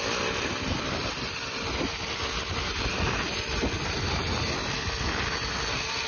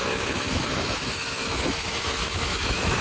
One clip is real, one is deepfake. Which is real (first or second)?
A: first